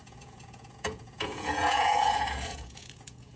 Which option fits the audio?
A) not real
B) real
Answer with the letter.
A